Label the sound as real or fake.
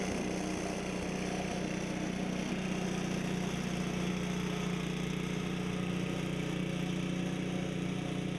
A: real